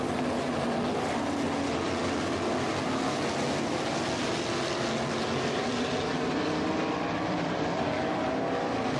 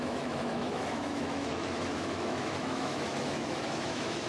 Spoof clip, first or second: second